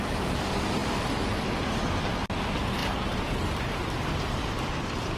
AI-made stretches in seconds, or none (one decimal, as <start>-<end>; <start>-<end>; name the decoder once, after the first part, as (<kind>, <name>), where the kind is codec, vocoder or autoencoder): 2.8-4.5 (vocoder, BigVGAN v2)